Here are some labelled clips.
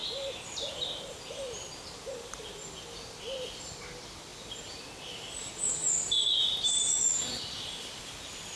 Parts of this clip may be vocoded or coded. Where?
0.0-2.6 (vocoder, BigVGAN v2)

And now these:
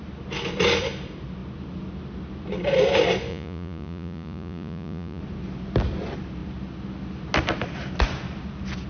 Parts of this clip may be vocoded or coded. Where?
3.3-5.2 (vocoder, Vocos)

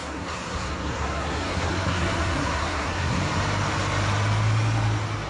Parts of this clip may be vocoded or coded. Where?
0.0-3.2 (codec, SNAC)

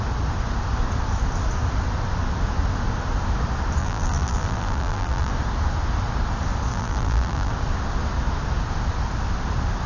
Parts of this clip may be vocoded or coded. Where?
3.8-5.3 (vocoder, BigVGAN v2); 6.7-7.5

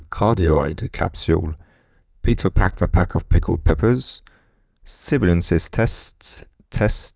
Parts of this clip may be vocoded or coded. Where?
0.0-1.1 (codec, SNAC); 1.8-3.7; 5.9-6.6

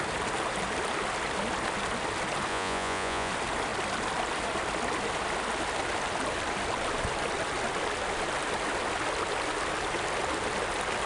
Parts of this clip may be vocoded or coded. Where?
2.5-3.3 (vocoder, Vocos)

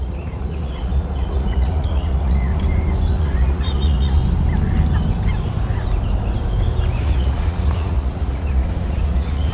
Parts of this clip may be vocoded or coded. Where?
0.0-2.5 (vocoder, Vocos); 3.1-4.2; 7.0-9.5